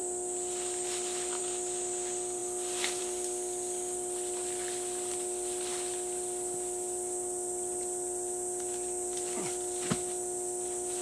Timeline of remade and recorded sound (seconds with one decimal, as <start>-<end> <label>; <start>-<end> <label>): 0.0-11.0 recorded